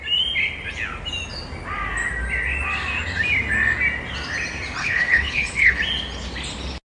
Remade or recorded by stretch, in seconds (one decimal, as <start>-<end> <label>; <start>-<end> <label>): 0.0-4.8 recorded; 4.8-5.8 remade; 5.8-6.8 recorded